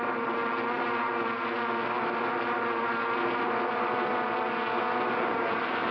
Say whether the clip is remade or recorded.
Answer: recorded